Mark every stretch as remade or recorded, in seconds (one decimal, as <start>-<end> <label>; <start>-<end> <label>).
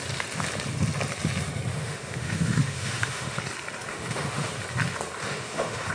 0.0-1.7 recorded; 1.7-3.4 remade; 3.4-3.9 recorded; 3.9-4.5 remade; 4.5-5.2 recorded; 5.2-5.9 remade